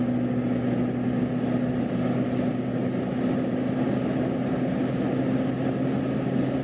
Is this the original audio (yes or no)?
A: yes